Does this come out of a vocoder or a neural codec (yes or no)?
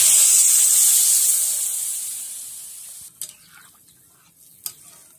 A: no